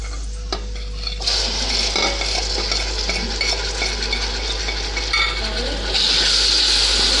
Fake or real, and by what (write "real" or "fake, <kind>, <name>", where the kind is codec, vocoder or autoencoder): real